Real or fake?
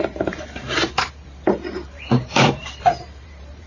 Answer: fake